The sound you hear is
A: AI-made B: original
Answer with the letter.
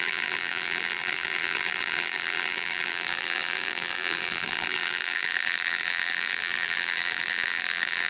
A